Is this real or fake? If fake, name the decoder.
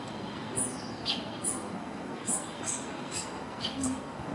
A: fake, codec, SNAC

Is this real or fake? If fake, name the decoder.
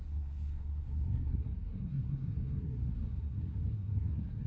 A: fake, codec, SNAC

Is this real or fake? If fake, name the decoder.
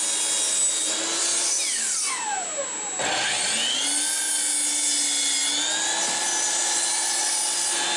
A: real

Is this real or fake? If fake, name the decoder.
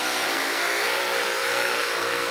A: fake, codec, SNAC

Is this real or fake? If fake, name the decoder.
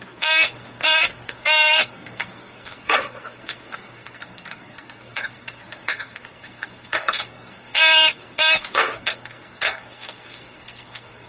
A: fake, codec, SNAC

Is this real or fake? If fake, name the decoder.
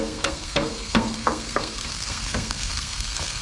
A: fake, codec, SNAC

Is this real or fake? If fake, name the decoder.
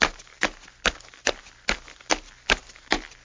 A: real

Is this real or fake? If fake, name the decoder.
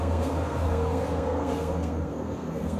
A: fake, codec, SNAC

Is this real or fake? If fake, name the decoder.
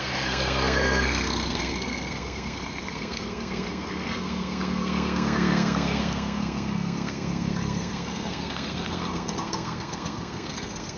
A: fake, codec, SNAC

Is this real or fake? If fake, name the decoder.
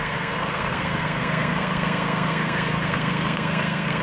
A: fake, codec, SNAC